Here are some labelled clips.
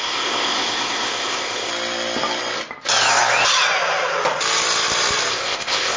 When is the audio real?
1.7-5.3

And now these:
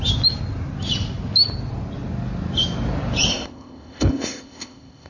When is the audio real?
0.0-3.3

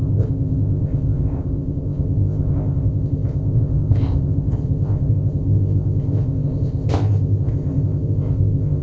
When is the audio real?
none

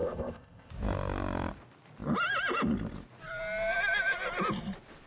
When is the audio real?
0.7-5.1

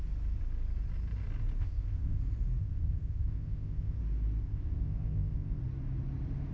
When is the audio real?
0.0-1.6; 2.2-2.6; 4.0-4.4; 5.6-6.5

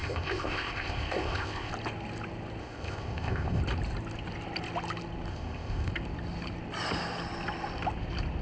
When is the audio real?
1.7-2.6; 3.6-5.3; 5.9-8.4